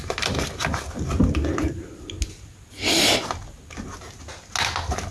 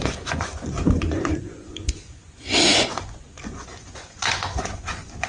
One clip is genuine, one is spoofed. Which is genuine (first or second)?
first